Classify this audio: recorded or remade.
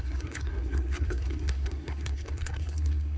remade